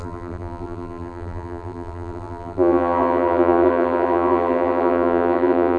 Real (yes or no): no